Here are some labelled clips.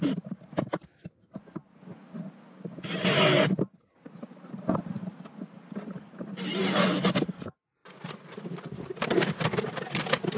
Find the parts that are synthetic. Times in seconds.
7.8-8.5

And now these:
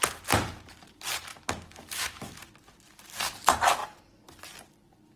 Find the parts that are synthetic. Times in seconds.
1.3-2.4

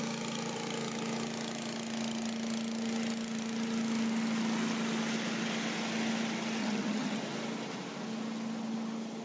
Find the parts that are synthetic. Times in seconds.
6.6-7.2

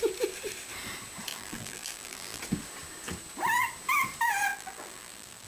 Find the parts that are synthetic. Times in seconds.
1.3-2.4; 4.5-5.5

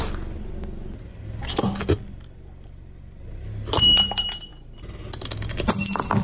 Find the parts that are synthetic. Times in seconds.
none

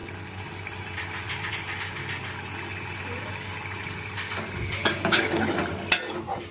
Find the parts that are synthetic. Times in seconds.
4.8-5.4

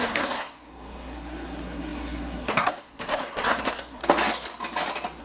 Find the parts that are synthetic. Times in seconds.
0.0-4.0